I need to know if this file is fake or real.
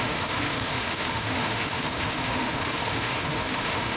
fake